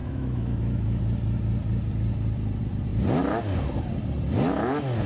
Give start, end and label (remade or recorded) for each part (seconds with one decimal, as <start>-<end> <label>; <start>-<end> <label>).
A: 0.0-1.0 remade; 1.0-5.1 recorded